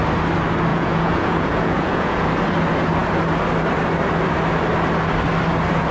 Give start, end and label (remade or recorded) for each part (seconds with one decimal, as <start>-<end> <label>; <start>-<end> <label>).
0.0-0.7 recorded; 0.7-2.3 remade; 2.3-5.9 recorded